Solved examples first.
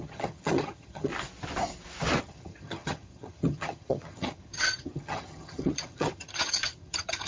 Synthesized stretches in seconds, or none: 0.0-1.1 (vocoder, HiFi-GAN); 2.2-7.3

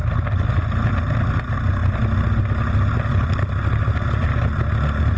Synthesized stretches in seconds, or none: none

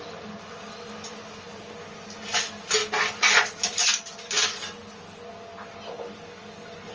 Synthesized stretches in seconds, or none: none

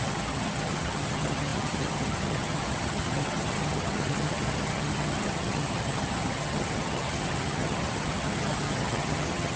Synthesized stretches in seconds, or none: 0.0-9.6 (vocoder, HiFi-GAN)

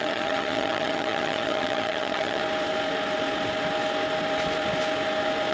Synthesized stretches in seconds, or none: 0.0-2.4 (vocoder, HiFi-GAN)

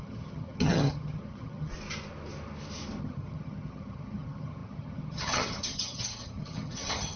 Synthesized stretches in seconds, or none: 0.0-1.7 (vocoder, HiFi-GAN); 3.0-7.2